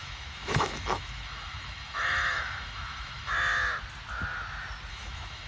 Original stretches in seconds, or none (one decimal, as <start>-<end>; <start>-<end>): 3.3-4.9